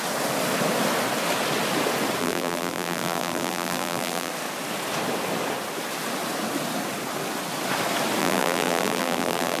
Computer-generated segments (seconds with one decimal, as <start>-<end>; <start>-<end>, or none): 2.2-4.3; 8.2-9.6